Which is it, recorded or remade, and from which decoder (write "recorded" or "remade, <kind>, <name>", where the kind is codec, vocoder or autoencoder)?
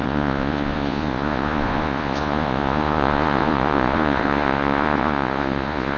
remade, vocoder, Vocos